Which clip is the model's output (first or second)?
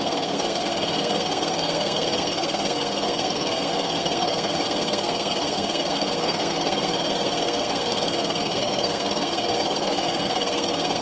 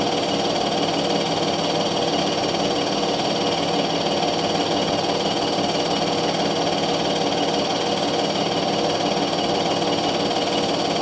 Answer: first